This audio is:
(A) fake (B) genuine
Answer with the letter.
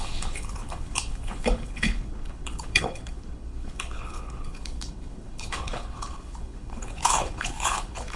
A